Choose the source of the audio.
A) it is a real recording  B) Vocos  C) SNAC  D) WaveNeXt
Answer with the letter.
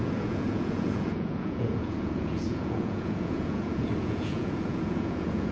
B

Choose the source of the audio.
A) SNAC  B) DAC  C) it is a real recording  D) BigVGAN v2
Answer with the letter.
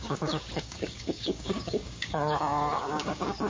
B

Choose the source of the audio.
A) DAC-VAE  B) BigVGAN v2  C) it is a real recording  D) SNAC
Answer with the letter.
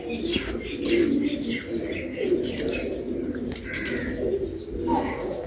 C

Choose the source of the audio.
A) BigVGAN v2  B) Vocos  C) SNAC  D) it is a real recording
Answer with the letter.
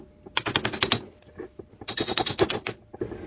D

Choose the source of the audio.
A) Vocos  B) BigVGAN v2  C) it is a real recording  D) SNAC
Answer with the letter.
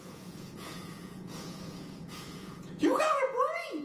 A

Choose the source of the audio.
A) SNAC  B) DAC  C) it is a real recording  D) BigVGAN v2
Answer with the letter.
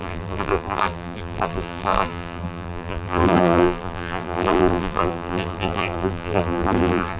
D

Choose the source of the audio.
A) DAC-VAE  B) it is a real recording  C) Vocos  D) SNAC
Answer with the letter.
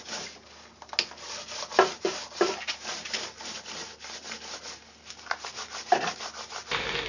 B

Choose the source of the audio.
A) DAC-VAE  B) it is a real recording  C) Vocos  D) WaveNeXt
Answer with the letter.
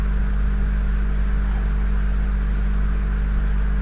B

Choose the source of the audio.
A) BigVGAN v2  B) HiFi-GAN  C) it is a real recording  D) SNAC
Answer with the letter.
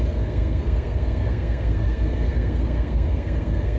D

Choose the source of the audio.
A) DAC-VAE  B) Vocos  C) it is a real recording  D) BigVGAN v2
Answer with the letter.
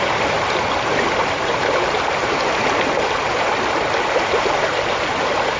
D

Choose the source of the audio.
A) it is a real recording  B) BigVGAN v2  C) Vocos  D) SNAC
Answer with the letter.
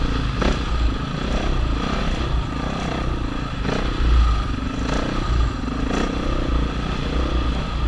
A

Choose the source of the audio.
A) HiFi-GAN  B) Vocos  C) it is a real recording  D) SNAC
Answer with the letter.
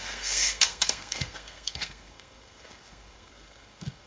D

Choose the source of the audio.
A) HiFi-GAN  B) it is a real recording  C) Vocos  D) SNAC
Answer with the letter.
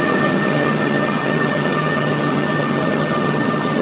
A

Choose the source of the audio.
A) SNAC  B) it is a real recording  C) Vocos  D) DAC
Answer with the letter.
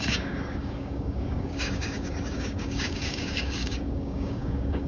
D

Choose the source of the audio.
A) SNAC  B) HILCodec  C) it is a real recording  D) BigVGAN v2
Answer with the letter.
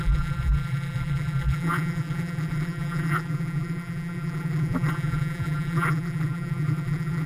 D